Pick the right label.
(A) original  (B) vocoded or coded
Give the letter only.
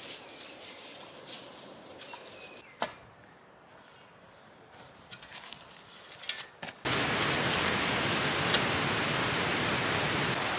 A